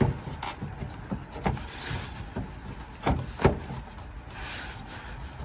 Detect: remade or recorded recorded